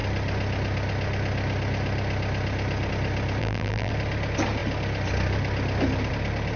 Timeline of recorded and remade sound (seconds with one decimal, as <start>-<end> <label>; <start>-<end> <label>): 0.0-3.4 recorded; 3.4-3.9 remade; 3.9-6.6 recorded